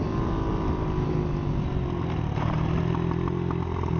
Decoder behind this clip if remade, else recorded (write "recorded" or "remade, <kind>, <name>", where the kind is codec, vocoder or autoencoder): recorded